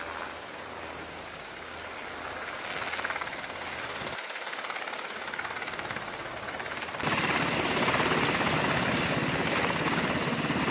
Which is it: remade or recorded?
recorded